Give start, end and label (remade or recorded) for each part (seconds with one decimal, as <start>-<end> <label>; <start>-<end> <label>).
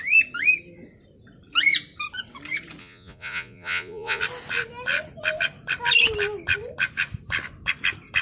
0.0-2.8 recorded; 2.8-4.2 remade; 4.2-8.2 recorded